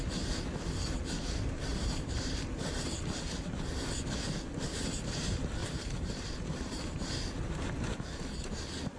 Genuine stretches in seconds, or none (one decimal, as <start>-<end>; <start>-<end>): 0.0-1.7; 2.4-5.6; 7.1-9.0